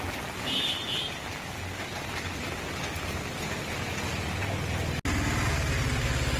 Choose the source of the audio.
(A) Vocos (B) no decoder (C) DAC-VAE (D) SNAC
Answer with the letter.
B